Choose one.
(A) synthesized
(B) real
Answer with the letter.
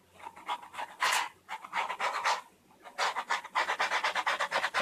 B